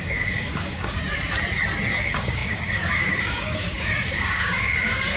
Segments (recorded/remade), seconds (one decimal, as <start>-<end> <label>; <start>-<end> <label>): 0.0-1.0 remade; 1.0-1.9 recorded; 1.9-5.2 remade